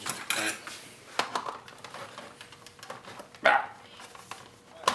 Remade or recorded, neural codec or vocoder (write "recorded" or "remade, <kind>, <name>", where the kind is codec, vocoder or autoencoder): recorded